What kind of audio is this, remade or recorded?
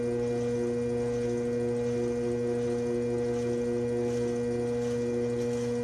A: recorded